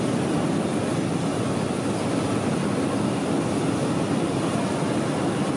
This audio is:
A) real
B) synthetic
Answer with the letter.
A